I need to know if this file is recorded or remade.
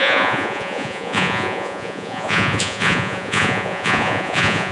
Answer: remade